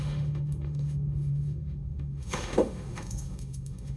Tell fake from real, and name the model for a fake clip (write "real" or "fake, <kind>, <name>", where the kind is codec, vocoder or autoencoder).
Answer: fake, autoencoder, DAC-VAE